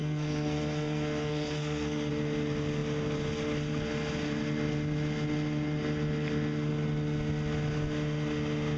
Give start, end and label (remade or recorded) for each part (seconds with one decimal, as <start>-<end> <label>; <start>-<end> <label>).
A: 0.0-2.1 remade; 2.1-8.8 recorded